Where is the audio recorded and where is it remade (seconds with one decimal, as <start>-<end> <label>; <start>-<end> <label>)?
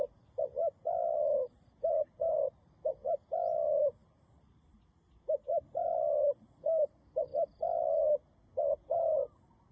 0.0-4.0 recorded; 4.0-5.9 remade; 5.9-9.7 recorded